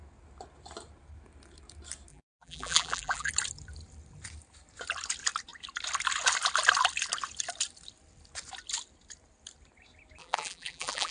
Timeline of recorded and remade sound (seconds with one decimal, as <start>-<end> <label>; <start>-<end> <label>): 0.0-2.1 recorded; 2.1-3.3 remade; 3.3-10.2 recorded; 10.2-11.1 remade